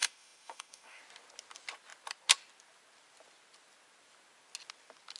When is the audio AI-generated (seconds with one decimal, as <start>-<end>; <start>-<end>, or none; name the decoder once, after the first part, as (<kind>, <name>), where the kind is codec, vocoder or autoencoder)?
0.0-1.0 (autoencoder, DAC-VAE)